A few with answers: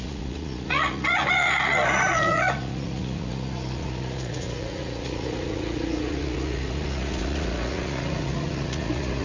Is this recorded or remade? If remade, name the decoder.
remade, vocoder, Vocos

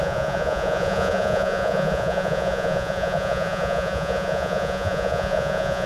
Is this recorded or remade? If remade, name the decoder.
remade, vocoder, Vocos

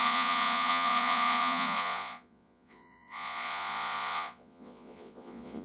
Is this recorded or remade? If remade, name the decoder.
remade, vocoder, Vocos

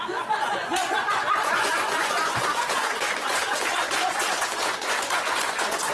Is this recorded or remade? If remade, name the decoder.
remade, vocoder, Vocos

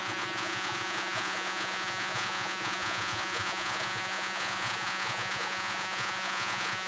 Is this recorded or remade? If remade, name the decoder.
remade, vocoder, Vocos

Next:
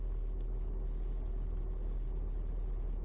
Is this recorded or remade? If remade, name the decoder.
recorded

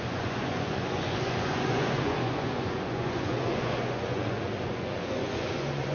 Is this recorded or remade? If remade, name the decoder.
remade, vocoder, Vocos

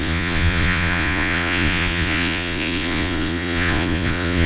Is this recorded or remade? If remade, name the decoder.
remade, vocoder, Vocos